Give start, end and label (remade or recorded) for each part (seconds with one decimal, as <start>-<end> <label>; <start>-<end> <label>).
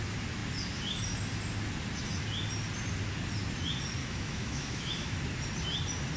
0.0-4.0 recorded; 4.0-5.2 remade; 5.2-6.2 recorded